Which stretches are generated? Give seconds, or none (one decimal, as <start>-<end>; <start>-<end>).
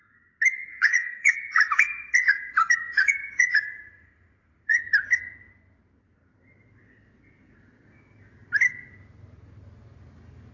0.7-4.8